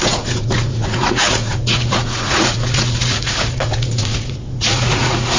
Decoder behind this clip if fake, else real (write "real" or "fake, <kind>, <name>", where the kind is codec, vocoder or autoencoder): fake, vocoder, Vocos